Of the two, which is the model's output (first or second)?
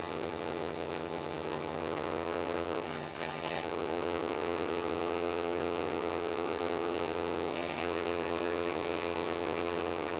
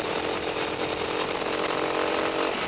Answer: first